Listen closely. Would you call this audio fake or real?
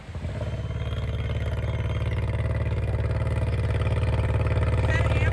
real